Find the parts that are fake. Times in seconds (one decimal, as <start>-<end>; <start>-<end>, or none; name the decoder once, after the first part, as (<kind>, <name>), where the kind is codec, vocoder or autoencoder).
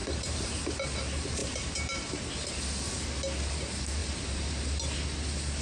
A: 0.0-0.6 (vocoder, BigVGAN v2); 1.4-2.0; 4.0-4.6